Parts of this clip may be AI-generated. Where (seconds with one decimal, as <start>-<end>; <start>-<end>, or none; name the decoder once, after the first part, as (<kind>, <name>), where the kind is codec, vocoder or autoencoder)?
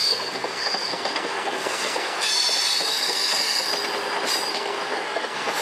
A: 0.0-2.3 (codec, SNAC); 2.9-3.7; 4.5-5.6